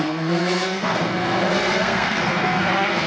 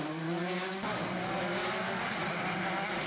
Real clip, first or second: second